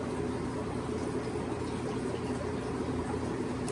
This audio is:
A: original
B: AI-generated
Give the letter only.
A